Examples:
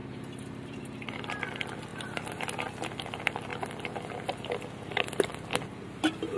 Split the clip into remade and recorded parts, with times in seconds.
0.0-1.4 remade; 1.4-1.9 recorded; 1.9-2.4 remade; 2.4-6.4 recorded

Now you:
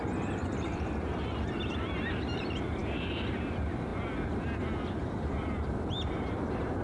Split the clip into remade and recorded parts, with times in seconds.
0.0-2.8 remade; 2.8-3.5 recorded; 3.5-6.8 remade

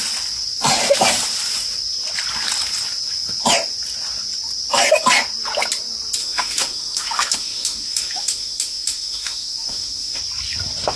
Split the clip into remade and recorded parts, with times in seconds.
0.0-6.2 recorded; 6.2-10.2 remade; 10.2-11.0 recorded

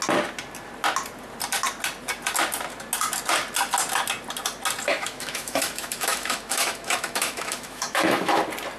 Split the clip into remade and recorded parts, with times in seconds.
0.0-4.9 recorded; 4.9-8.4 remade; 8.4-8.8 recorded

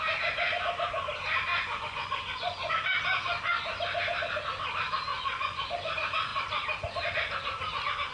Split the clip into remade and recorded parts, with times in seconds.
0.0-1.5 recorded; 1.5-2.7 remade; 2.7-5.1 recorded; 5.1-5.7 remade; 5.7-8.1 recorded

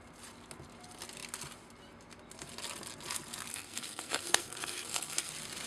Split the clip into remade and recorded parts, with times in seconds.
0.0-3.5 recorded; 3.5-5.3 remade; 5.3-5.7 recorded